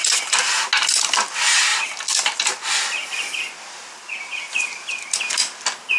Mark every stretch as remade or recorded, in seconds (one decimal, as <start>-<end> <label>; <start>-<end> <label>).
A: 0.0-6.0 recorded